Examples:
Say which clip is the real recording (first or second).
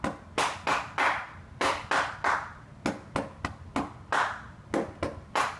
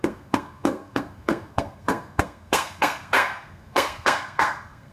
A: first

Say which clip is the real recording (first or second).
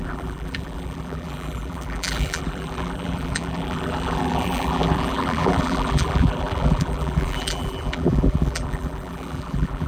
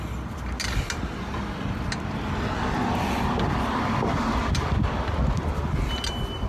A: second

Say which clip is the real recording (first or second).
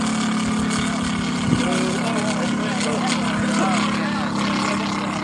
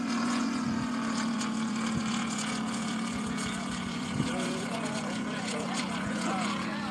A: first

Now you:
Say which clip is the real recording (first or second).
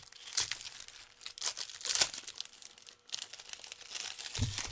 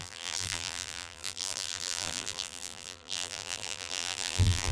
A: first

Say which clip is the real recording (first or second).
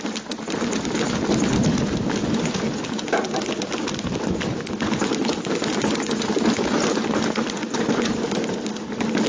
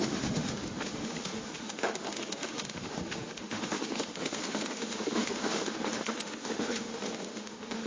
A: first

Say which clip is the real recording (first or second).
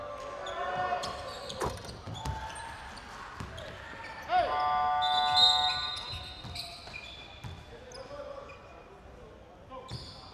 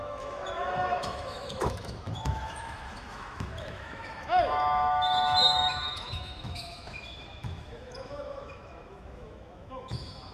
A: first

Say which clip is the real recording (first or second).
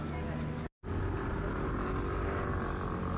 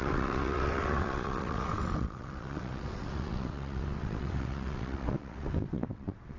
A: first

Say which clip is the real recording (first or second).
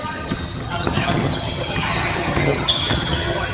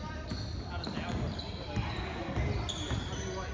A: second